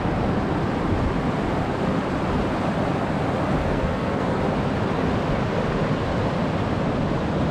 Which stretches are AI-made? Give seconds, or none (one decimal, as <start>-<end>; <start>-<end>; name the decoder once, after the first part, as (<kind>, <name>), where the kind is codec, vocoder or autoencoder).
3.6-4.4 (codec, SNAC)